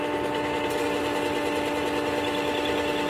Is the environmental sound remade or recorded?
recorded